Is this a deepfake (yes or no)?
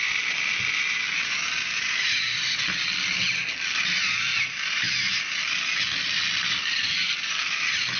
yes